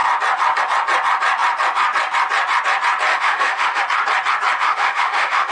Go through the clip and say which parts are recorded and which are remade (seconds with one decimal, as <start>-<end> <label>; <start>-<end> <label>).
0.0-3.1 recorded; 3.1-3.8 remade; 3.8-4.6 recorded; 4.6-5.5 remade